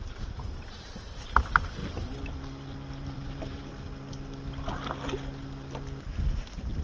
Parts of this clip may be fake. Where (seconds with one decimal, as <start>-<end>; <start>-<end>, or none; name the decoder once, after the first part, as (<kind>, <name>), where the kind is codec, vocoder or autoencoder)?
0.0-1.8 (vocoder, BigVGAN v2); 3.1-3.6